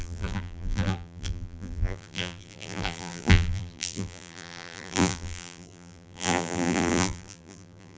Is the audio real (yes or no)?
no